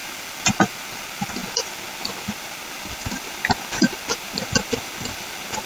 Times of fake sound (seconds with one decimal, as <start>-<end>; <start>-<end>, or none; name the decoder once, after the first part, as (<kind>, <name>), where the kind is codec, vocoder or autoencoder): none